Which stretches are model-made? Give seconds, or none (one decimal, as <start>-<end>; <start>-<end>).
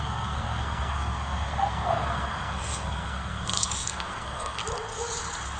0.0-4.6